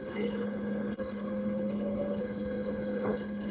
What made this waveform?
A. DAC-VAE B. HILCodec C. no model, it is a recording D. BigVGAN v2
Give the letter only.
B